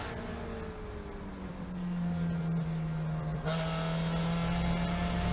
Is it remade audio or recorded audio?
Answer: recorded